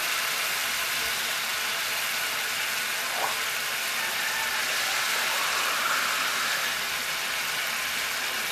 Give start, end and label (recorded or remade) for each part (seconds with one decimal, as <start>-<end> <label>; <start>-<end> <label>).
0.0-0.6 recorded; 0.6-1.1 remade; 1.1-8.5 recorded